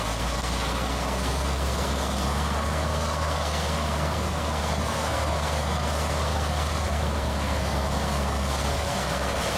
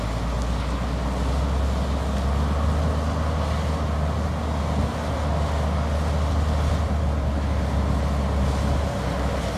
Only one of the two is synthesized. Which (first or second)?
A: first